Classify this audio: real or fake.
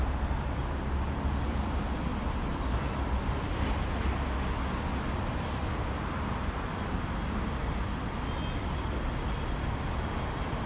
real